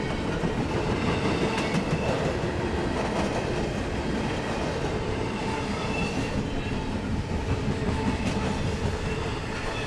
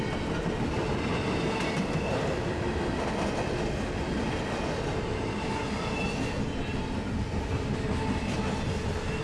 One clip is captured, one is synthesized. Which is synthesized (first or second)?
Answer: first